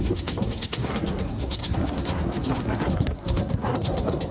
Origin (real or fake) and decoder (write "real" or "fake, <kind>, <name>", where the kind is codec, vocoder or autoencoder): fake, codec, SNAC